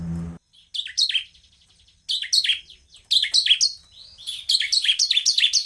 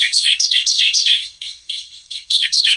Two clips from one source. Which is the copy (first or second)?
second